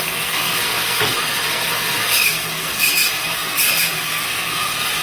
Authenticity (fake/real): fake